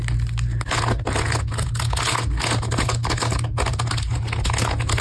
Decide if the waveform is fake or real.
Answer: real